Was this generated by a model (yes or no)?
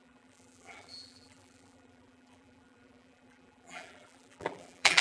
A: yes